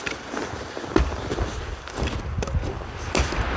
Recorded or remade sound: remade